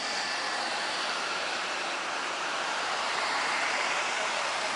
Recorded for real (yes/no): no